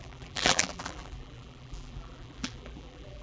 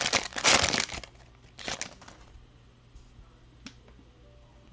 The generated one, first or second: first